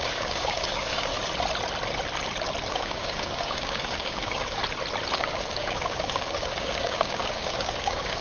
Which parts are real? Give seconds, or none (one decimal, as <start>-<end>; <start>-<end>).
1.1-2.7; 4.6-5.1